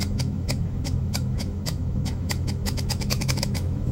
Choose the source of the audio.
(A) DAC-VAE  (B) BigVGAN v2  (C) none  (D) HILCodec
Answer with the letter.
A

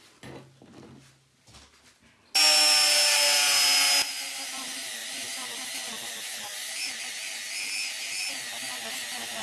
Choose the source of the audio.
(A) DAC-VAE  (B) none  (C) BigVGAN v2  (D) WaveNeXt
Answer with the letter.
B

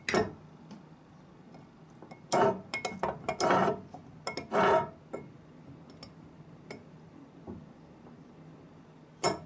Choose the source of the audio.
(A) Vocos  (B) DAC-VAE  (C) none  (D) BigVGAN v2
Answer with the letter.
C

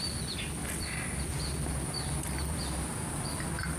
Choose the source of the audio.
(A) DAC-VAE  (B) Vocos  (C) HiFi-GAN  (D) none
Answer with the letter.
D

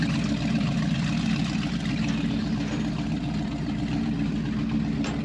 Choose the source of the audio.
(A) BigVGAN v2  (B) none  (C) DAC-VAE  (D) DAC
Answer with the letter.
B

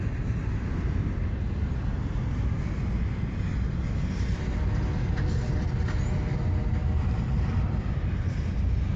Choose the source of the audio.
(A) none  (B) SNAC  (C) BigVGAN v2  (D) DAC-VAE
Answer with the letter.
A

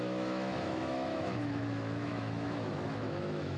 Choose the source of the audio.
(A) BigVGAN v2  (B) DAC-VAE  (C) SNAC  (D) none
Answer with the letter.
B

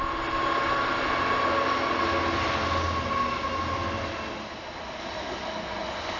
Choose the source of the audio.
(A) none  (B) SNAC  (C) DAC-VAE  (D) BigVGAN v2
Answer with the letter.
A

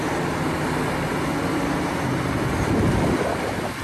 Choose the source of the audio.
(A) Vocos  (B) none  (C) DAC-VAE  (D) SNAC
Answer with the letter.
B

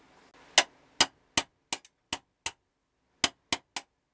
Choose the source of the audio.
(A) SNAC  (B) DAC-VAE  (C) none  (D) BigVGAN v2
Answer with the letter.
C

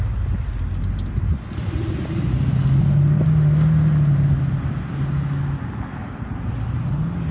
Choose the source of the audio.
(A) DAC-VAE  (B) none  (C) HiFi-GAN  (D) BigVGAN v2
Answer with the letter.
B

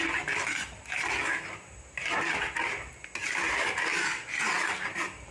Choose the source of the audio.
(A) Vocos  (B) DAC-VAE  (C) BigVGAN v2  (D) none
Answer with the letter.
D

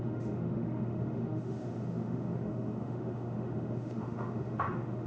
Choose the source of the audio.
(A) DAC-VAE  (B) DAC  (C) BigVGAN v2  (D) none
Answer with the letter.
A